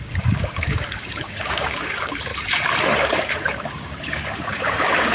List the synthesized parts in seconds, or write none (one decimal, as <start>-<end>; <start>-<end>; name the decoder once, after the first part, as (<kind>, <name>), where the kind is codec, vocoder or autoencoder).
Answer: 0.0-2.3 (codec, DAC); 3.1-5.1